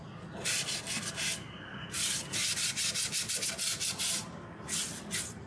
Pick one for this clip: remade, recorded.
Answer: recorded